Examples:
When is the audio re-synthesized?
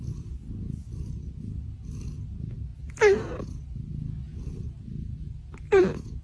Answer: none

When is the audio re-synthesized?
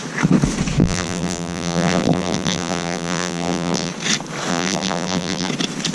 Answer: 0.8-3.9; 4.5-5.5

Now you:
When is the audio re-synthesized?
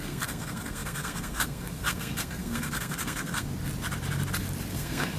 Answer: 0.0-3.5; 4.7-5.2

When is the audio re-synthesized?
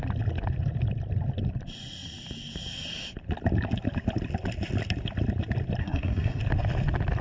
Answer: 5.8-6.4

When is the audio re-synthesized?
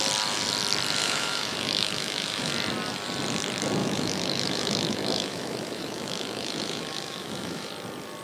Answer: 1.0-2.5; 3.8-7.7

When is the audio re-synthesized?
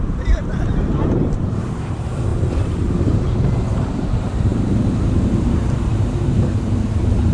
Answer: 0.0-2.3; 3.7-7.3